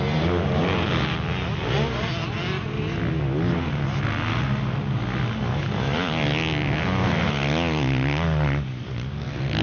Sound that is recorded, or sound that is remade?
recorded